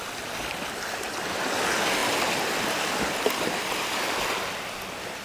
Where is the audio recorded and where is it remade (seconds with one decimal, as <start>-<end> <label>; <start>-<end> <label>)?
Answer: 0.0-2.0 recorded; 2.0-3.6 remade; 3.6-5.2 recorded